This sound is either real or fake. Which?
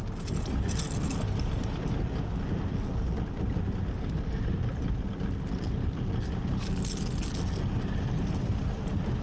real